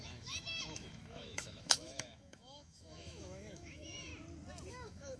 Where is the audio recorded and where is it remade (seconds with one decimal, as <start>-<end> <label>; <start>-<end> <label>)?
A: 0.0-4.1 remade; 4.1-4.7 recorded; 4.7-5.2 remade